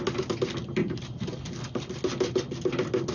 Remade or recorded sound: recorded